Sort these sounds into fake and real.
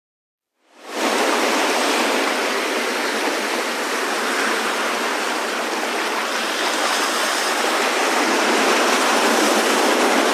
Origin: real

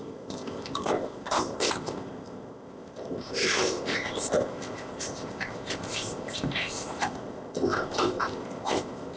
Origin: fake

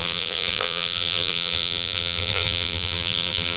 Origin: fake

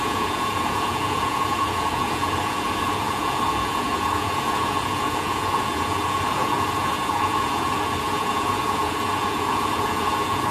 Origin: fake